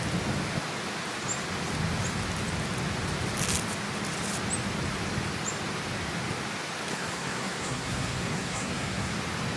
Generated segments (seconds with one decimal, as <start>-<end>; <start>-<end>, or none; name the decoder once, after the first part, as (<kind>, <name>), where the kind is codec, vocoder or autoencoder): 6.9-9.2 (codec, SNAC)